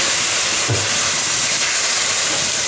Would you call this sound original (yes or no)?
yes